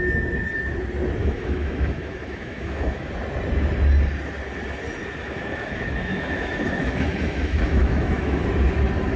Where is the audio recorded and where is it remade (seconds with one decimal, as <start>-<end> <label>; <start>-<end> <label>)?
0.0-1.2 recorded; 1.2-3.1 remade; 3.1-5.2 recorded; 5.2-8.4 remade; 8.4-9.2 recorded